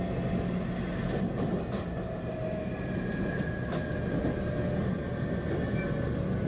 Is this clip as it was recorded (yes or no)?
yes